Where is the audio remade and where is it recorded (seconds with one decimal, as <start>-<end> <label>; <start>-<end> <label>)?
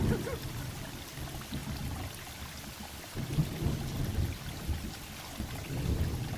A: 0.0-6.4 recorded